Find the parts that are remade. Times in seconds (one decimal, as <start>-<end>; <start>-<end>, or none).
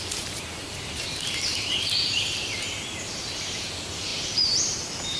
0.0-5.2